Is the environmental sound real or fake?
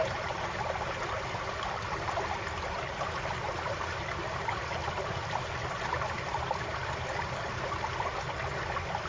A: real